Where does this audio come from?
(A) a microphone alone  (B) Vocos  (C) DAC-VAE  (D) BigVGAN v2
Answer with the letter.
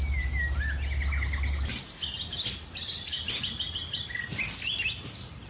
A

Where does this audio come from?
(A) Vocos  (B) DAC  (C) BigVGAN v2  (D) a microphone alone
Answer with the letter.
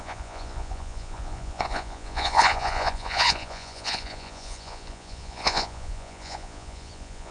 A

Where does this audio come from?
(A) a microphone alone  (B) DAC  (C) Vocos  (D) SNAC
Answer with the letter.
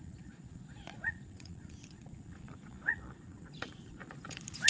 C